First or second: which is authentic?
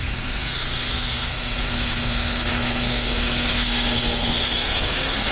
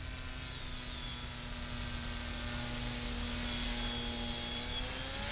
second